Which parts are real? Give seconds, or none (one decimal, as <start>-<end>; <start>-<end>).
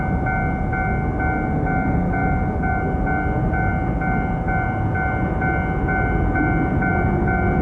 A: 0.0-7.6